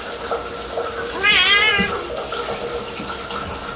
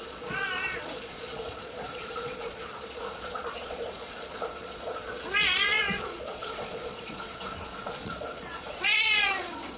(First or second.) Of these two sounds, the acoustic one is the first